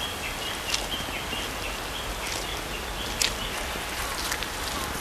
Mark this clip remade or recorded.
recorded